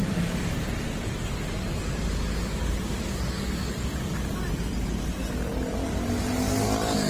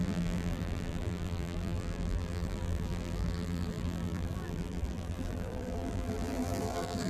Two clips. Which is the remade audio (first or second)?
second